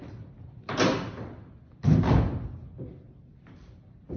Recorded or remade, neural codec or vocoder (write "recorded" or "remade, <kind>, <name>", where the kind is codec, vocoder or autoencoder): recorded